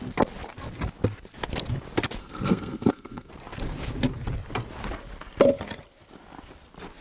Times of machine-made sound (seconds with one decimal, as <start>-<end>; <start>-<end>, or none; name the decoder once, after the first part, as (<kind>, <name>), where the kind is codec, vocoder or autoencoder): 2.2-3.3 (codec, SNAC)